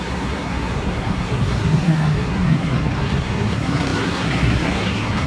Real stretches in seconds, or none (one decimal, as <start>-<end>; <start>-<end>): none